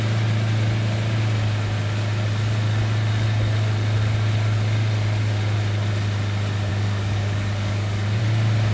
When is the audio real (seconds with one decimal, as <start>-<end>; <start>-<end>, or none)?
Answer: 0.0-6.7; 8.2-8.7